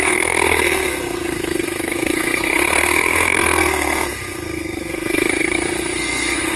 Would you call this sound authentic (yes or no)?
no